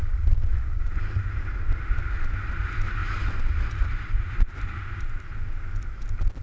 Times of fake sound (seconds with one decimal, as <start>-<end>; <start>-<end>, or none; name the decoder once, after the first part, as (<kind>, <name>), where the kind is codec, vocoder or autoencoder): none

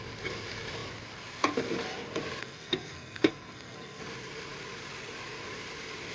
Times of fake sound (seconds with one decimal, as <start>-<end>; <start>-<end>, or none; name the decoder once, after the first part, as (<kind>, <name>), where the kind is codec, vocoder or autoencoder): 2.4-4.0 (codec, SNAC)